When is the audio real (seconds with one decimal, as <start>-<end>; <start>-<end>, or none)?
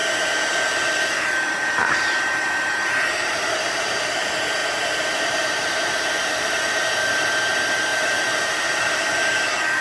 0.0-1.2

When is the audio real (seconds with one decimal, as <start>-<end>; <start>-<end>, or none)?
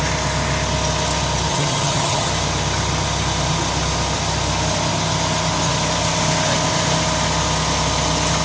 0.0-1.5; 2.3-8.4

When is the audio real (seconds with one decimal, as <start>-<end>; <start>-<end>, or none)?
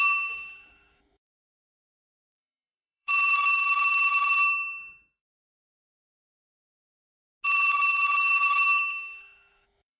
3.6-8.2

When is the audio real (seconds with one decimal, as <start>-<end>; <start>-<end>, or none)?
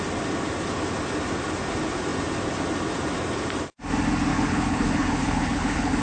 0.0-4.3